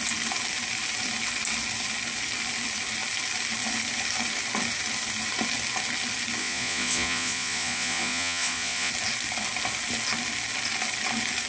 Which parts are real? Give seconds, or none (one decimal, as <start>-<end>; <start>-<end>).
0.0-6.4; 8.9-11.5